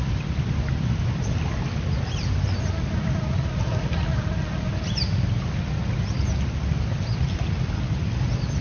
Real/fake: real